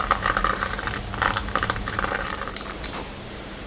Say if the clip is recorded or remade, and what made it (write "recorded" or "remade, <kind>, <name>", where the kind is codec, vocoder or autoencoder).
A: remade, vocoder, BigVGAN v2